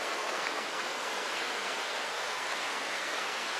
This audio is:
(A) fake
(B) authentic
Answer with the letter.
A